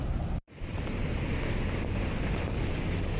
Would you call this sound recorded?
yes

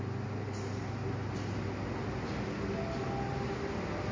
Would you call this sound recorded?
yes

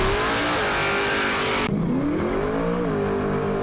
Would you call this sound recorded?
yes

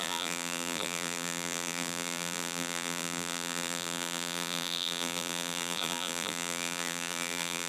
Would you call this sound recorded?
no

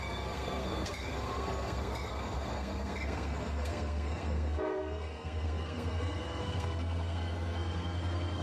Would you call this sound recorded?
no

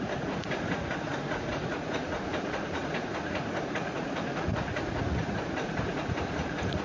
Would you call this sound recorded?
no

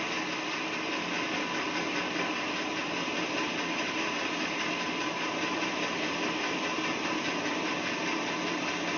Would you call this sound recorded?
yes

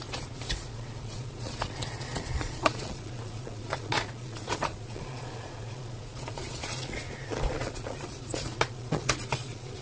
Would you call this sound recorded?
no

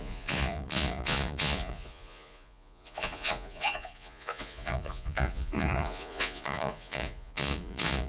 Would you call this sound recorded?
no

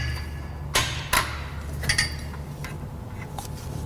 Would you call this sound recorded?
yes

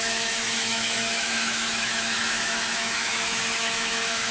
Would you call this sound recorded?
no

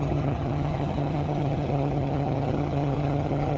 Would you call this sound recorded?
no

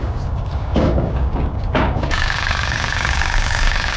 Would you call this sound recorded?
no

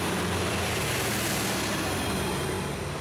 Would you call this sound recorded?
yes